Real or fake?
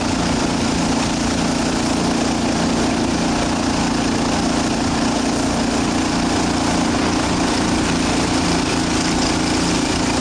real